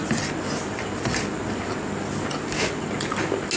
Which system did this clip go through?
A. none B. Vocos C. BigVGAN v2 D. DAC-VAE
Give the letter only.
A